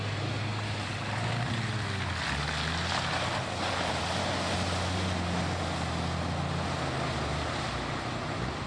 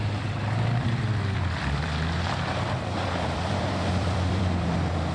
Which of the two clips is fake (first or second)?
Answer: second